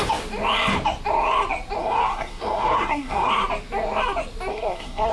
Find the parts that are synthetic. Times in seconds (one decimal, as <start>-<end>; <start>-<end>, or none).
1.8-3.3; 4.5-5.1